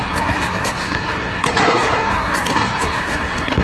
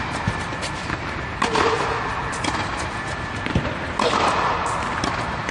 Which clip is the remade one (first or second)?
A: first